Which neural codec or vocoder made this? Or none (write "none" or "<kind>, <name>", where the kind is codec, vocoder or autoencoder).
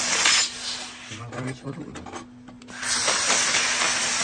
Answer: none